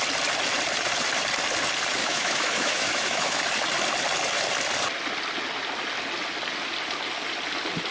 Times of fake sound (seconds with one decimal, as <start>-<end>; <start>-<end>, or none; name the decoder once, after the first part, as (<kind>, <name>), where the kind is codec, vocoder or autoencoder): 2.0-3.4 (autoencoder, DAC-VAE)